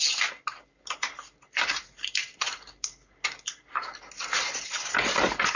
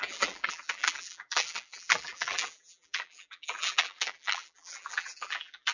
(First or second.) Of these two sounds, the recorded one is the first